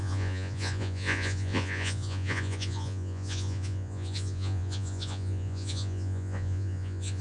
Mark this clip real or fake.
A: fake